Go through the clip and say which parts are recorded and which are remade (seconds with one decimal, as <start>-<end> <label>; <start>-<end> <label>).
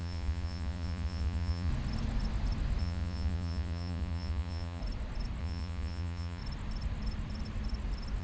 0.0-1.7 remade; 1.7-2.8 recorded; 2.8-4.8 remade; 4.8-5.4 recorded; 5.4-6.4 remade; 6.4-8.2 recorded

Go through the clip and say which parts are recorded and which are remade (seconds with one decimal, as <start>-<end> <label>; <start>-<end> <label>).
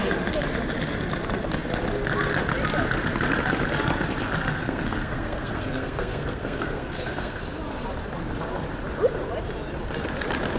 0.0-4.6 recorded; 4.6-7.4 remade; 7.4-10.6 recorded